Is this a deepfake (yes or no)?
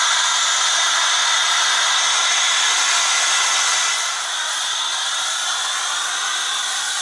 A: no